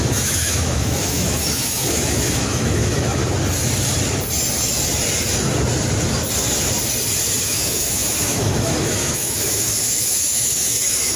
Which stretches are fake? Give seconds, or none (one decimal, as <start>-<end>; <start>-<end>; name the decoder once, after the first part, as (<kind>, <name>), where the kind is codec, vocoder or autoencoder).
0.0-3.2 (autoencoder, DAC-VAE); 7.4-11.2